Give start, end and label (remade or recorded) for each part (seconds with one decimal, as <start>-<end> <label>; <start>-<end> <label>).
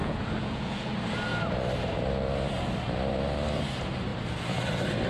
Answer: 0.0-0.9 remade; 0.9-5.1 recorded